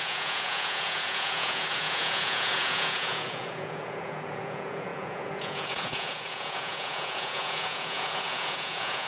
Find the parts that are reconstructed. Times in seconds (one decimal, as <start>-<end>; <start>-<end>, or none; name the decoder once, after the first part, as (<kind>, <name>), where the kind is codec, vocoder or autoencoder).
0.0-9.1 (vocoder, Vocos)